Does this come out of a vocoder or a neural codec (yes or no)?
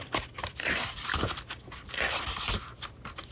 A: no